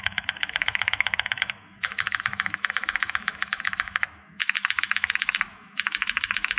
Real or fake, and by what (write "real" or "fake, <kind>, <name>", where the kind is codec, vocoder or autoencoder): fake, autoencoder, DAC-VAE